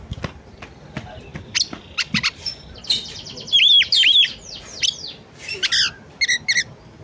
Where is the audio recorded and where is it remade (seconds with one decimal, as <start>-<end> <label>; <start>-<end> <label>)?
0.0-7.0 recorded

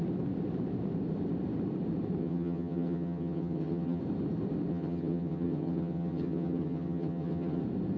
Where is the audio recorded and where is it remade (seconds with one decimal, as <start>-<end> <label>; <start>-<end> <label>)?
0.0-2.2 recorded; 2.2-4.0 remade; 4.0-4.7 recorded; 4.7-7.6 remade; 7.6-8.0 recorded

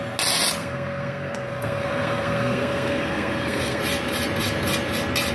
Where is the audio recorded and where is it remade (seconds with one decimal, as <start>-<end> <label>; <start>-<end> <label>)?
0.0-0.6 recorded; 0.6-3.8 remade; 3.8-5.3 recorded